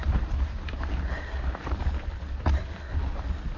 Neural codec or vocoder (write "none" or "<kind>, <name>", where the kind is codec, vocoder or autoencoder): none